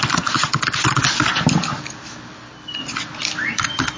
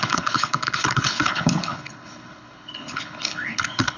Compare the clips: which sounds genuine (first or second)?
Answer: first